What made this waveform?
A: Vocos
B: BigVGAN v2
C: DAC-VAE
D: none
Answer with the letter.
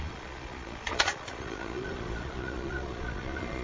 A